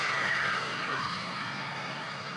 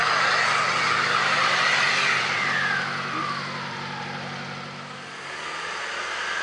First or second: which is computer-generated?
first